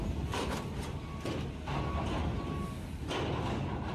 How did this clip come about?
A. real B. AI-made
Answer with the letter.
A